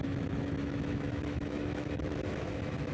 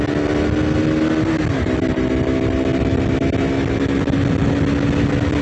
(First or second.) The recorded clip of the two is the second